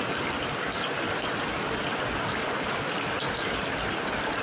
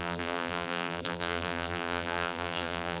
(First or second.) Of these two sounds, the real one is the first